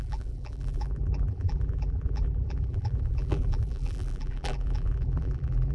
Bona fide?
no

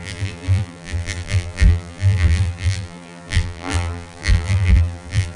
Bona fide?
no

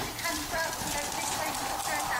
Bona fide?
no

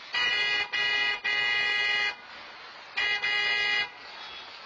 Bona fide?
yes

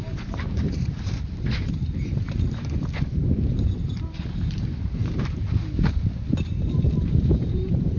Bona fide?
no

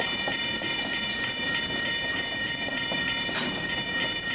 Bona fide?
no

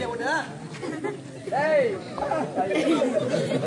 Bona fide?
yes